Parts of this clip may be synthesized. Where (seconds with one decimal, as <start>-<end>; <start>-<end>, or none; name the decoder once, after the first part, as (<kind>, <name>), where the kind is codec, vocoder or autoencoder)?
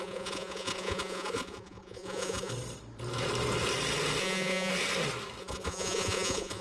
0.0-2.5 (vocoder, Vocos); 4.2-4.7; 5.4-6.6